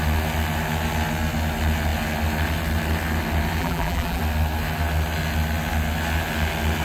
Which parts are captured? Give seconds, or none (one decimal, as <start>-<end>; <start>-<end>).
0.0-3.6; 4.2-6.8